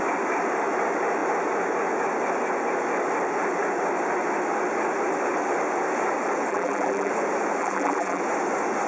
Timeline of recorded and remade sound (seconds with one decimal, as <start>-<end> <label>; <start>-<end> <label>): 0.0-6.5 recorded; 6.5-7.1 remade; 7.1-7.6 recorded; 7.6-8.2 remade; 8.2-8.9 recorded